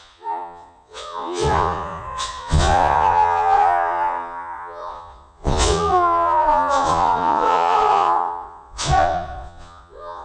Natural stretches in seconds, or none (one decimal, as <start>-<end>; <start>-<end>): none